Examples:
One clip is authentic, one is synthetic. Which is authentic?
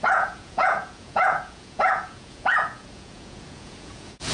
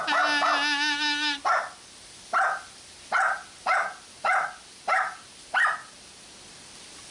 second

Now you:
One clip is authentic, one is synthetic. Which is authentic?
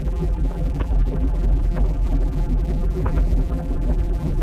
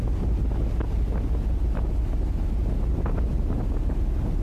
second